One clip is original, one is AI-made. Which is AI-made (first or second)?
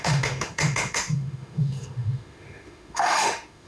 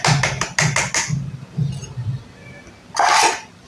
first